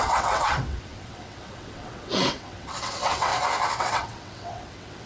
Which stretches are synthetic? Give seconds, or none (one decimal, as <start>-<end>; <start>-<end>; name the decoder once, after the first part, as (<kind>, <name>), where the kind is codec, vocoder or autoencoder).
0.0-3.3 (vocoder, WaveNeXt); 3.8-5.1